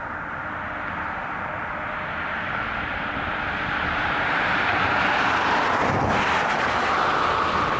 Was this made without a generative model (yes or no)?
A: no